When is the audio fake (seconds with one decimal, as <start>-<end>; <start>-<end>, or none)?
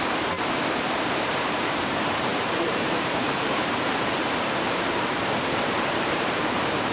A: 0.0-6.9